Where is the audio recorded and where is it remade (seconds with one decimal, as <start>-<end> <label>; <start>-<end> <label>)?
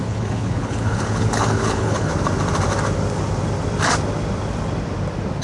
0.0-2.1 remade; 2.1-5.4 recorded